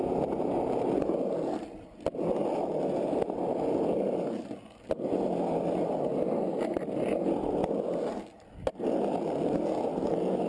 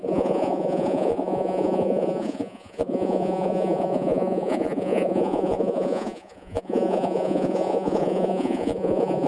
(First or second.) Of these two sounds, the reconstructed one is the second